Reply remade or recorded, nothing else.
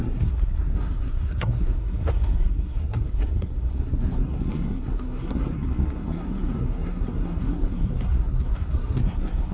remade